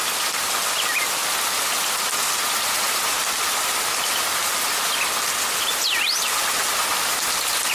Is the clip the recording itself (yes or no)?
yes